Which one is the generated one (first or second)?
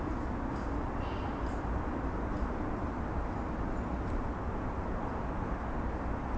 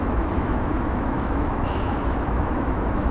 second